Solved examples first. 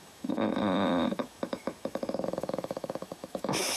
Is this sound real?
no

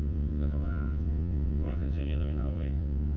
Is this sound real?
no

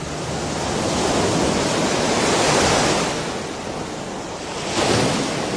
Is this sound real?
yes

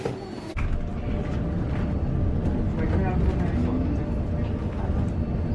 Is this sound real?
yes